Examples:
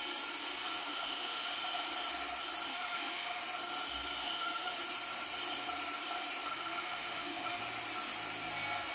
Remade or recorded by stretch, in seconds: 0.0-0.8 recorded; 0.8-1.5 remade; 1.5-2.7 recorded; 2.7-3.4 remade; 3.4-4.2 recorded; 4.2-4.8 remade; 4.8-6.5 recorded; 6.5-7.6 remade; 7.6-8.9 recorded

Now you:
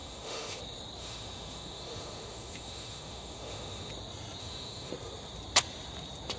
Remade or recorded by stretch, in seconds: 0.0-0.6 remade; 0.6-1.0 recorded; 1.0-3.9 remade; 3.9-4.4 recorded; 4.4-4.9 remade; 4.9-6.4 recorded

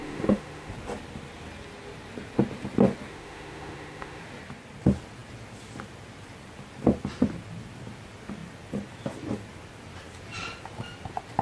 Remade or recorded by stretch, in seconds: 0.0-0.7 remade; 0.7-3.1 recorded; 3.1-4.2 remade; 4.2-11.4 recorded

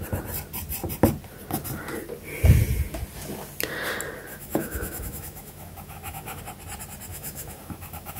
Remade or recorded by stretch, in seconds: 0.0-4.3 recorded; 4.3-6.4 remade; 6.4-7.1 recorded; 7.1-8.2 remade

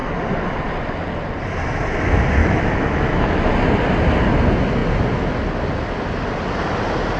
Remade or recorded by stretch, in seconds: 0.0-2.4 recorded; 2.4-3.5 remade; 3.5-7.2 recorded